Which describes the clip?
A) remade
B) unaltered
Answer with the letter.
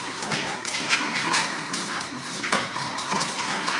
A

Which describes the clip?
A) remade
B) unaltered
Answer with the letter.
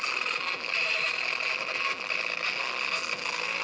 B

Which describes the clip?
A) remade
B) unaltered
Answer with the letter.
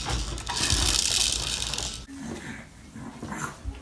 B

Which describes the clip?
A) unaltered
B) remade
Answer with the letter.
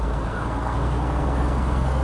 B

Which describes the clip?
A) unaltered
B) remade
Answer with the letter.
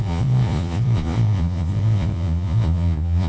B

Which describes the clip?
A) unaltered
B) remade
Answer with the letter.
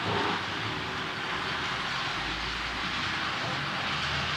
A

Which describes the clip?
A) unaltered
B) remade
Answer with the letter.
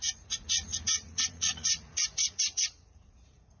B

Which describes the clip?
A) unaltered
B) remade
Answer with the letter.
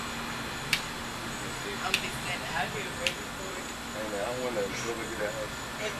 A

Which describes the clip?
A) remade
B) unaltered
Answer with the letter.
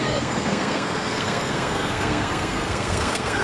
A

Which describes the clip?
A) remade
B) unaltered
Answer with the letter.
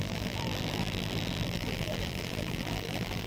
A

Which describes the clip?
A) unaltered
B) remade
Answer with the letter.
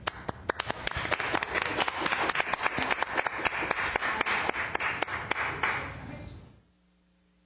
A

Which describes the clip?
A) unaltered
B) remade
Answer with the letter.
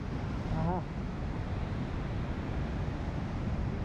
A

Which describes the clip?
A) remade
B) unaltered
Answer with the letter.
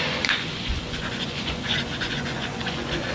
A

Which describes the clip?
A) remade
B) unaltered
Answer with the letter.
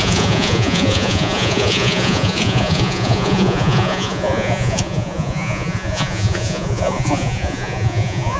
A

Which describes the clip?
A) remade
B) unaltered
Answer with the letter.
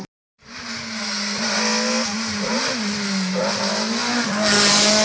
B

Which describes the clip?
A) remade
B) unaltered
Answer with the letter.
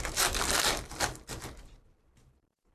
A